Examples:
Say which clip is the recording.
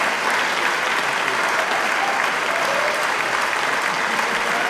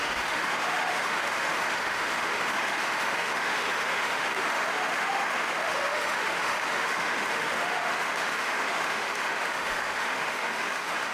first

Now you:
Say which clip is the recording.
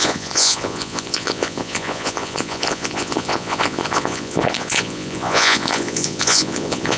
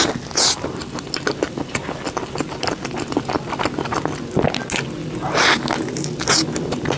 second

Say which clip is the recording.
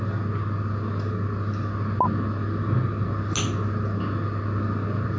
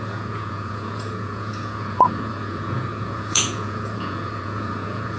first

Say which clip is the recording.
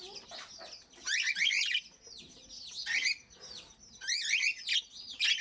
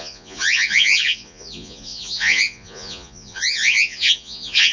first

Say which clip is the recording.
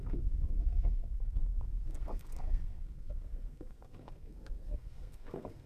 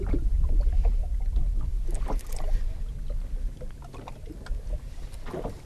second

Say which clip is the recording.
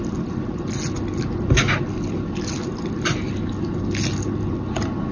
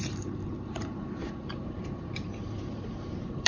first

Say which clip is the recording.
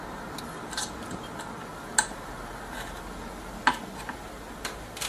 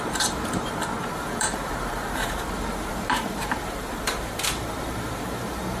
first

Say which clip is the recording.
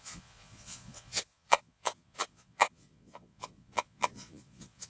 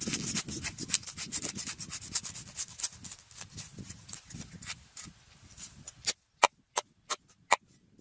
second